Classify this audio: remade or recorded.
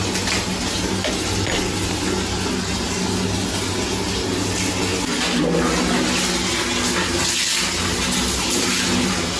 recorded